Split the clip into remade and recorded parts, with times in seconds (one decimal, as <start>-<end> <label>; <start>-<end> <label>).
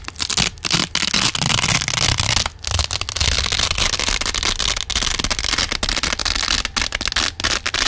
0.0-7.9 recorded